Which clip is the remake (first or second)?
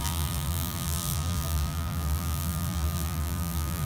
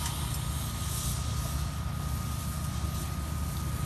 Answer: first